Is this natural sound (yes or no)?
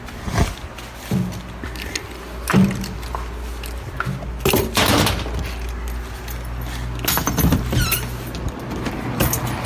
yes